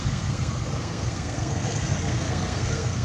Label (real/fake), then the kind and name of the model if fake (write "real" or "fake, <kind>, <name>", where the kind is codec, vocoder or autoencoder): fake, codec, SNAC